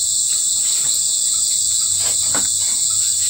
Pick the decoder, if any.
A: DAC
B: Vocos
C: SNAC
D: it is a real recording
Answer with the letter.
B